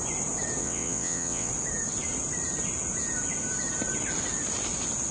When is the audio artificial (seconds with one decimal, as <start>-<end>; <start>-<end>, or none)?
0.6-1.5